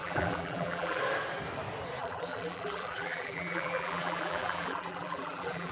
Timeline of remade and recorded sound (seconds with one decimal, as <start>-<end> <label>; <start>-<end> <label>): 0.0-1.0 remade; 1.0-2.0 recorded; 2.0-5.7 remade